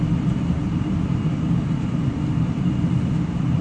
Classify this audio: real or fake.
fake